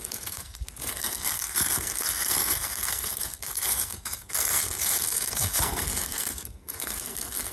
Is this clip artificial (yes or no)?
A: yes